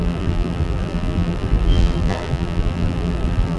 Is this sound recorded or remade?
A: remade